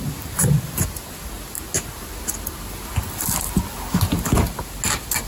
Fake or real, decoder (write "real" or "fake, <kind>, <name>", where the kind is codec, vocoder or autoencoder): real